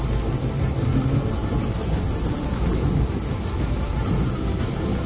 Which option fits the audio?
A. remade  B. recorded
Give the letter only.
B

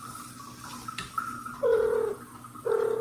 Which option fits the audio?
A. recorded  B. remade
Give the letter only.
A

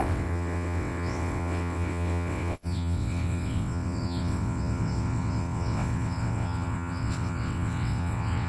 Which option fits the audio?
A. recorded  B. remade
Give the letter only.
B